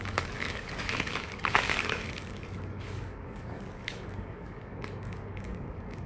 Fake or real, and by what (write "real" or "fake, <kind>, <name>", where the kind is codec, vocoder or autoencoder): fake, codec, DAC